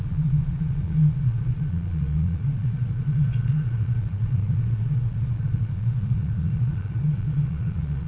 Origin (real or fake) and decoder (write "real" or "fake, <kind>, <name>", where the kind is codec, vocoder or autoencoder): fake, vocoder, Vocos